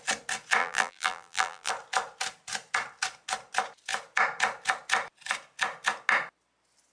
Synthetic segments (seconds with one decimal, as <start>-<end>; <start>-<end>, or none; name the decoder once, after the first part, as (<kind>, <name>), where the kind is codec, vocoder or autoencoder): 0.6-1.7 (vocoder, BigVGAN v2)